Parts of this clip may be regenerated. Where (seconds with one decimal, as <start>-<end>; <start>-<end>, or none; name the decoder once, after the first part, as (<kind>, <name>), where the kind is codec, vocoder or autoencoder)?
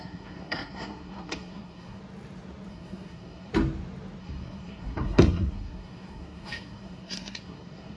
0.0-2.0 (codec, SNAC); 2.7-3.5; 4.2-8.0